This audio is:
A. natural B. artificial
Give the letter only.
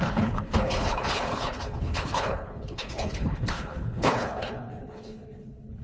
B